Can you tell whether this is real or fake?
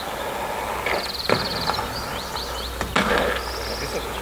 real